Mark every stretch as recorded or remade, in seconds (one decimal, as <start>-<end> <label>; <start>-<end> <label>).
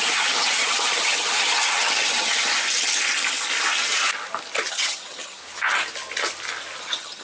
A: 0.0-2.5 remade; 2.5-4.7 recorded; 4.7-5.4 remade; 5.4-6.8 recorded; 6.8-7.2 remade